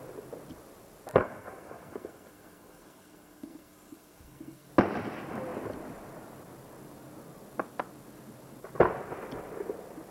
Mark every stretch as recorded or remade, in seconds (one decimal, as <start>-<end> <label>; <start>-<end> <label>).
0.0-1.1 recorded; 1.1-4.7 remade; 4.7-10.1 recorded